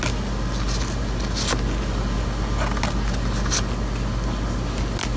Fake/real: real